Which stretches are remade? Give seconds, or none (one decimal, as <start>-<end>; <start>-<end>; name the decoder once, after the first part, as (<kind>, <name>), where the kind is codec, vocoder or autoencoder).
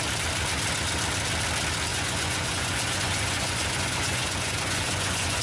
1.9-5.4 (vocoder, Vocos)